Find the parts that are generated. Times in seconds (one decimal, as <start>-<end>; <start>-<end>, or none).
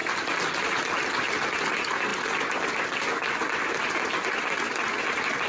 none